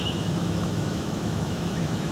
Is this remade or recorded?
remade